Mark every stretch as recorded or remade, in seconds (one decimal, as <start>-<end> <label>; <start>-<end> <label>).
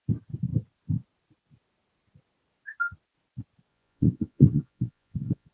0.0-3.7 recorded; 3.7-5.5 remade